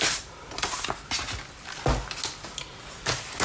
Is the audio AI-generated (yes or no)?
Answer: no